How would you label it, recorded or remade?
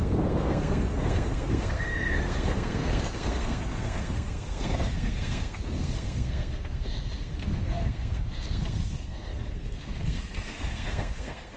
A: remade